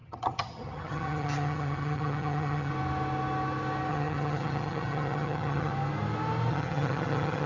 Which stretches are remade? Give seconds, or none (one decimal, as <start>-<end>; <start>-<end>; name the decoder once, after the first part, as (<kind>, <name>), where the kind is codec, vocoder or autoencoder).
0.0-2.7 (vocoder, HiFi-GAN); 3.9-5.7; 6.5-7.5